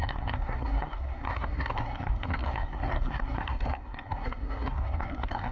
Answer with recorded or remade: remade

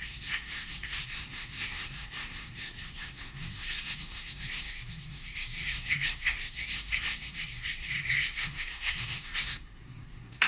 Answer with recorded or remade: remade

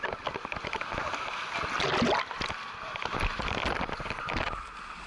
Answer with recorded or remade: recorded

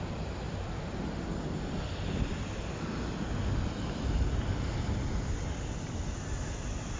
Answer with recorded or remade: recorded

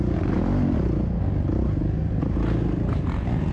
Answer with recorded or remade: recorded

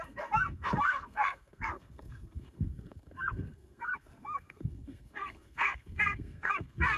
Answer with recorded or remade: remade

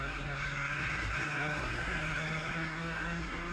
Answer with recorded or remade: remade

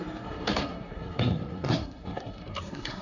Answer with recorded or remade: remade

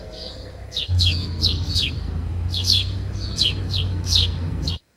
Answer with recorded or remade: remade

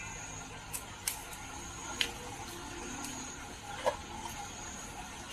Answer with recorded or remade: recorded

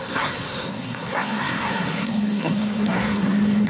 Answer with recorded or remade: remade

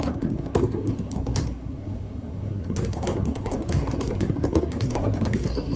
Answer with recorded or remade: remade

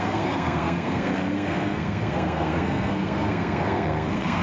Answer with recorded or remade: remade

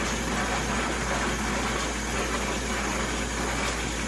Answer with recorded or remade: recorded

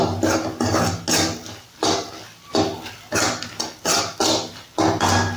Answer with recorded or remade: recorded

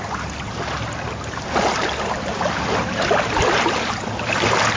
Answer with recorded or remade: recorded